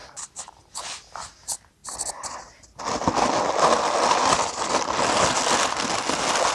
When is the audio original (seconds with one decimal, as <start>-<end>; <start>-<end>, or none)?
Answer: 0.0-6.5